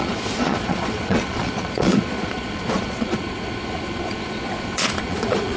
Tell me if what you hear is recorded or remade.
remade